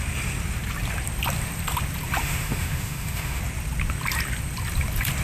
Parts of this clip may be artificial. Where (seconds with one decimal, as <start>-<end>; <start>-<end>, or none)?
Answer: 2.2-3.4